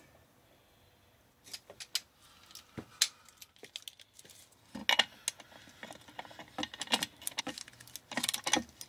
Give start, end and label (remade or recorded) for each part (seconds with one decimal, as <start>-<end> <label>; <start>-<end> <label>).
0.0-8.9 recorded